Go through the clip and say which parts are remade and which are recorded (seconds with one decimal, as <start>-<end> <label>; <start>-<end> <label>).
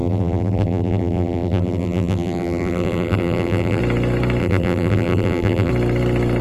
0.0-3.8 remade; 3.8-4.4 recorded; 4.4-5.7 remade; 5.7-6.4 recorded